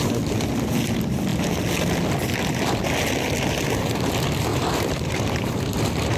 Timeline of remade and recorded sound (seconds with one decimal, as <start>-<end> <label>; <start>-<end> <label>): 0.0-4.5 recorded; 4.5-6.2 remade